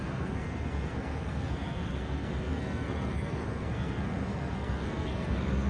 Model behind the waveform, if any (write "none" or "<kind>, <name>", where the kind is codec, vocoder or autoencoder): codec, SNAC